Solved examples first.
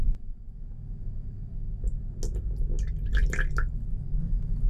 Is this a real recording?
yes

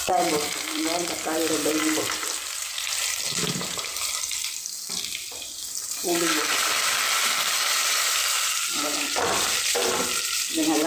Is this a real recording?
no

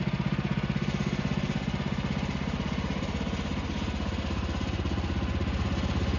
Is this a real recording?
yes